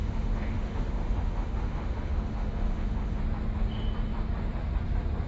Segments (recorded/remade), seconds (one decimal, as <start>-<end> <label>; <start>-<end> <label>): 0.0-3.2 remade; 3.2-5.3 recorded